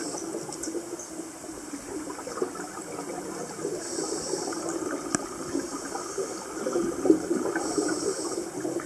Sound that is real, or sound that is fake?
real